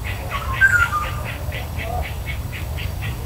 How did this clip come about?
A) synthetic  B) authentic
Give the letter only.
A